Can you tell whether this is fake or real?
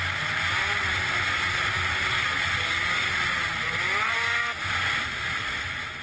real